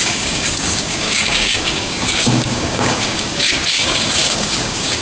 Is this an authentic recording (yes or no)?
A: no